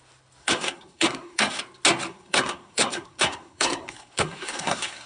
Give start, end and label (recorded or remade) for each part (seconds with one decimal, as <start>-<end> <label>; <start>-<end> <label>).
0.0-0.4 recorded; 0.4-1.6 remade; 1.6-2.1 recorded; 2.1-5.1 remade